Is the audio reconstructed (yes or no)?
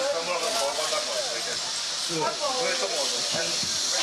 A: no